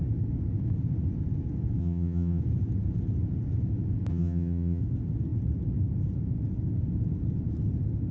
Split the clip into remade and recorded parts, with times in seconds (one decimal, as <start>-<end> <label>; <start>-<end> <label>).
0.0-1.8 recorded; 1.8-2.4 remade; 2.4-4.1 recorded; 4.1-4.8 remade; 4.8-8.1 recorded